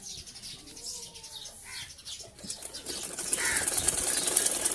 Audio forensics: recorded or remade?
recorded